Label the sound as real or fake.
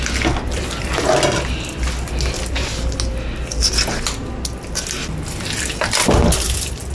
real